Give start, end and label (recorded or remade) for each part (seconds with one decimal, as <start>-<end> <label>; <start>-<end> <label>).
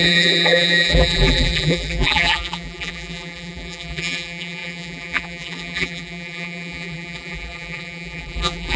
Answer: 0.0-8.8 remade